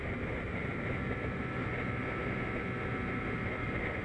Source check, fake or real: real